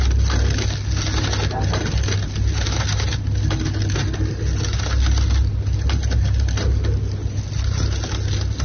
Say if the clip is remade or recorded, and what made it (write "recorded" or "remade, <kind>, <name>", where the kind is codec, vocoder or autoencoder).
recorded